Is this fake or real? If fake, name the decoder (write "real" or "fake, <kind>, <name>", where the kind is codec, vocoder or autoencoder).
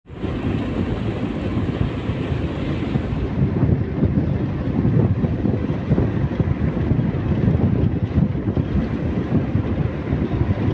real